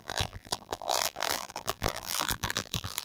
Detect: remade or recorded remade